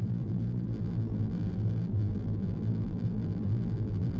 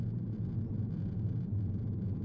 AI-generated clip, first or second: first